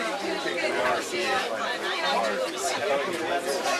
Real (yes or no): yes